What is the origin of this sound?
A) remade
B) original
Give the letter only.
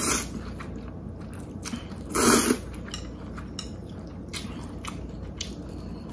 B